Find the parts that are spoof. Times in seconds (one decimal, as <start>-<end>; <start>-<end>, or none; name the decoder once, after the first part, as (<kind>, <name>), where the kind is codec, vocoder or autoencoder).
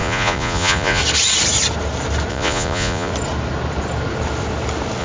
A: 0.0-1.0 (vocoder, Vocos); 2.3-3.1